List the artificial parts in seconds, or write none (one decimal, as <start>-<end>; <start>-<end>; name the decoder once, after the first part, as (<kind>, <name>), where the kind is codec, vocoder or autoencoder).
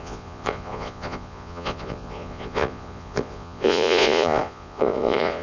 0.0-5.4 (vocoder, Vocos)